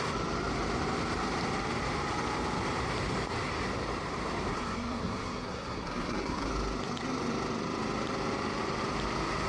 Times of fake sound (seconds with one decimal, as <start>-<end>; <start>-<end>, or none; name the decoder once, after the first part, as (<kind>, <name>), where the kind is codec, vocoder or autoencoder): 4.5-6.5 (codec, SNAC)